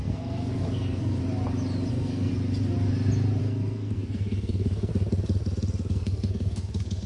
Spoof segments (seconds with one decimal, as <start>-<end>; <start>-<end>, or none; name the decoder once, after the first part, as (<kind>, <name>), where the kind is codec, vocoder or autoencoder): 0.0-1.2 (codec, SNAC); 1.9-2.3; 3.4-4.9; 5.9-7.1

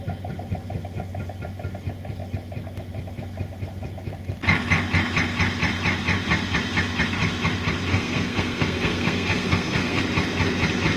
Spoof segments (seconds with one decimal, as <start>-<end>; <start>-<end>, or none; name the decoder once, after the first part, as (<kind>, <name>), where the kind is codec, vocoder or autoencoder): 7.9-10.0 (codec, SNAC)

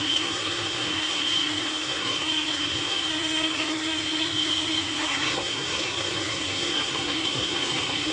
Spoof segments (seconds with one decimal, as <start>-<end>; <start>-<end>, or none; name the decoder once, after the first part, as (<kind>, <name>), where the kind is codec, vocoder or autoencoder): 0.0-8.1 (codec, SNAC)

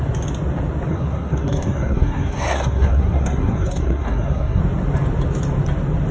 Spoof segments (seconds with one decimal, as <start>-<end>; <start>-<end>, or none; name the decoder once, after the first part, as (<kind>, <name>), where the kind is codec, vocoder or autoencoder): 0.9-4.6 (codec, SNAC)

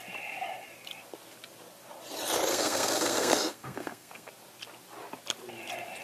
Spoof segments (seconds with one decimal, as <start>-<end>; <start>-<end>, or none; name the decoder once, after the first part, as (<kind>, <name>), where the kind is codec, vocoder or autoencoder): 2.5-4.3 (codec, SNAC)

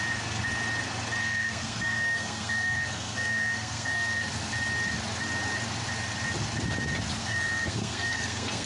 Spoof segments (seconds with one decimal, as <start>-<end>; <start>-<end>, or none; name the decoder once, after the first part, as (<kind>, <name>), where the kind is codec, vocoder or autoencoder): 1.2-4.2 (codec, SNAC); 7.2-8.7

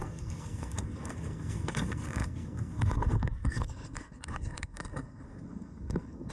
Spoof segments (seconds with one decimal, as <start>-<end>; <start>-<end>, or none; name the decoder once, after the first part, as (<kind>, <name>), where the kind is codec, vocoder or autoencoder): 0.0-6.3 (codec, SNAC)

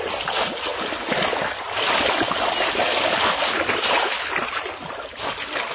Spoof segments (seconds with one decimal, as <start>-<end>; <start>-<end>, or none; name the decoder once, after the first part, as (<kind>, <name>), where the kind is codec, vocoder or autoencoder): none